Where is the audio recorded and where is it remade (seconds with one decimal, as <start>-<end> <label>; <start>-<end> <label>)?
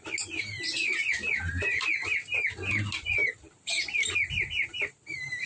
0.0-5.5 recorded